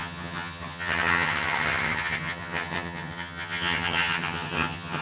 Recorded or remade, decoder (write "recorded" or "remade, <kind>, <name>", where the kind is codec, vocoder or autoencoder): remade, vocoder, HiFi-GAN